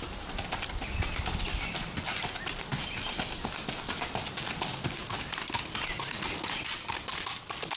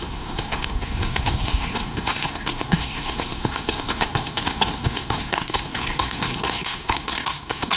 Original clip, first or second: first